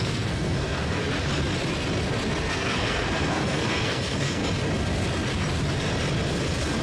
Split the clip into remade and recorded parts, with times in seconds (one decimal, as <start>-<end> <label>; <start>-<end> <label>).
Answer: 0.0-1.0 remade; 1.0-2.5 recorded; 2.5-4.4 remade; 4.4-6.8 recorded